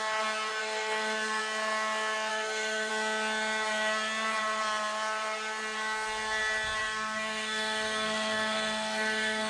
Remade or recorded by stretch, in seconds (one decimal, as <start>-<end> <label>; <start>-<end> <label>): 0.0-0.6 recorded; 0.6-1.4 remade; 1.4-2.3 recorded; 2.3-2.9 remade; 2.9-6.8 recorded; 6.8-9.5 remade